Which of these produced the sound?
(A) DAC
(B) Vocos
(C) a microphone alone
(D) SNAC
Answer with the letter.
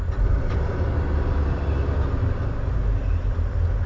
C